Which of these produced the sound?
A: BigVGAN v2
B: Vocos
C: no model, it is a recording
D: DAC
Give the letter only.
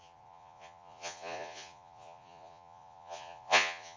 B